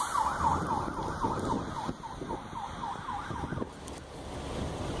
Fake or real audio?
real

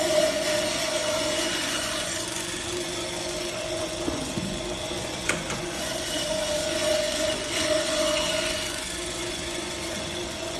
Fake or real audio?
fake